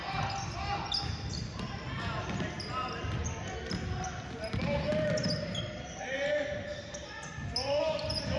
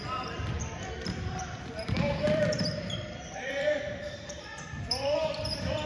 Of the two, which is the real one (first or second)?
first